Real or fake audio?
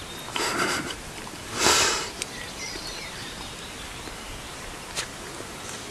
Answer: fake